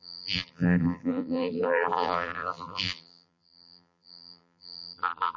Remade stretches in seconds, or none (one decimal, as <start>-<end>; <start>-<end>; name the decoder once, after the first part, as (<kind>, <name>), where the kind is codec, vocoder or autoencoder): 0.0-5.4 (vocoder, BigVGAN v2)